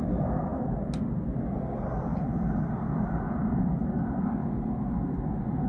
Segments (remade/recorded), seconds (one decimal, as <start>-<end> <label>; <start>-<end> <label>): 0.0-5.7 recorded